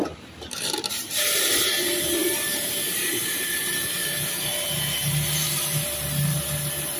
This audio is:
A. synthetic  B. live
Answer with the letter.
A